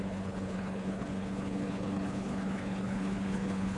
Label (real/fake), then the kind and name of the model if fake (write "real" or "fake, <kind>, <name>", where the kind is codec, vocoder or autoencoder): fake, codec, HILCodec